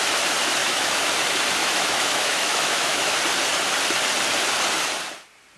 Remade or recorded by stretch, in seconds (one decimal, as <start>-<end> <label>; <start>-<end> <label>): 0.0-0.6 recorded; 0.6-1.1 remade; 1.1-1.6 recorded; 1.6-3.2 remade; 3.2-5.6 recorded